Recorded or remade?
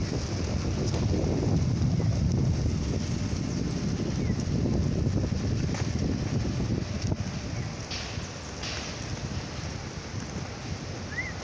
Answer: recorded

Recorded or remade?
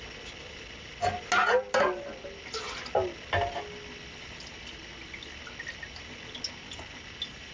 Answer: recorded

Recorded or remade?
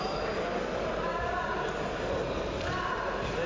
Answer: recorded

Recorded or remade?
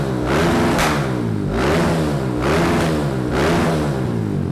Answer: recorded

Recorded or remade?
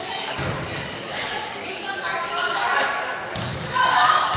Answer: remade